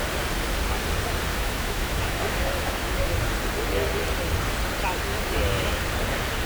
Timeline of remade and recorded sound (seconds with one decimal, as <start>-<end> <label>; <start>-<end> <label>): 0.0-1.3 recorded; 1.3-3.2 remade; 3.2-5.1 recorded; 5.1-5.8 remade; 5.8-6.5 recorded